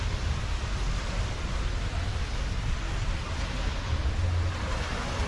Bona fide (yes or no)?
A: yes